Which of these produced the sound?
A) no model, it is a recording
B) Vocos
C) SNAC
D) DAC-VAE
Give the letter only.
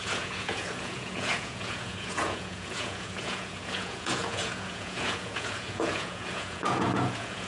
B